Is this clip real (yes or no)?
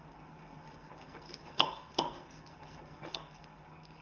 no